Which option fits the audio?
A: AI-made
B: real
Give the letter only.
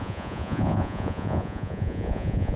A